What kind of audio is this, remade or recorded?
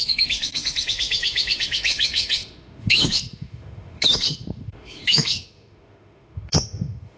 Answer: remade